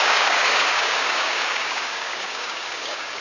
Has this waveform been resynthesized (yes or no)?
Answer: yes